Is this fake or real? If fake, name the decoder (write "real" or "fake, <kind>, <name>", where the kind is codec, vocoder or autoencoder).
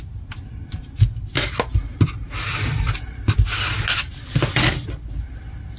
real